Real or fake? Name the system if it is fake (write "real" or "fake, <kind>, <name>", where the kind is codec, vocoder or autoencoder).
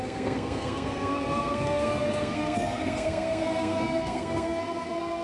fake, codec, SNAC